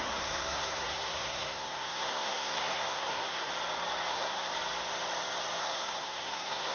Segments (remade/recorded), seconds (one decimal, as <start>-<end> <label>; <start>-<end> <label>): 0.0-3.5 remade; 3.5-4.1 recorded; 4.1-4.5 remade; 4.5-5.6 recorded; 5.6-6.7 remade